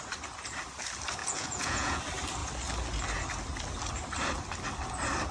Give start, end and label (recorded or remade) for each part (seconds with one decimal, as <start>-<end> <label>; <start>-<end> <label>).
0.0-1.2 recorded; 1.2-2.0 remade; 2.0-5.3 recorded